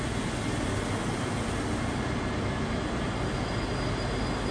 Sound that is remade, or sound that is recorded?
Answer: recorded